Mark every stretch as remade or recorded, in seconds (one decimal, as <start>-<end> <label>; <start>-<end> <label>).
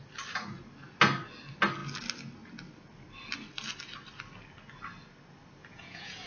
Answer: 0.0-5.6 recorded; 5.6-6.3 remade